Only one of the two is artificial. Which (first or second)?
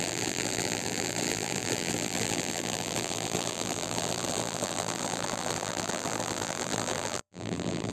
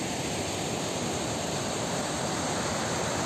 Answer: first